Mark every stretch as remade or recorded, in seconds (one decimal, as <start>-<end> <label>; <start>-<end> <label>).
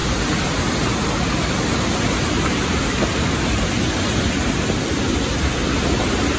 0.0-6.4 recorded